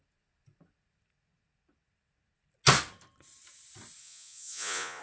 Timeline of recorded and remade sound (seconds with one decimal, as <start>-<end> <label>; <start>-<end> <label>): 0.0-4.0 recorded; 4.0-5.0 remade